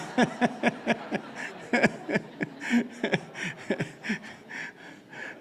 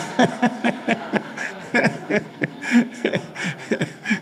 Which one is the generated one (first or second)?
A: second